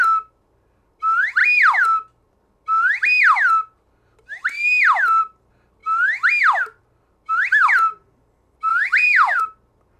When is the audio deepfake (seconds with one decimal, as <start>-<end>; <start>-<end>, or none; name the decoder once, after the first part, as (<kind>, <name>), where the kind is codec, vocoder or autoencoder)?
8.7-9.4 (vocoder, BigVGAN v2)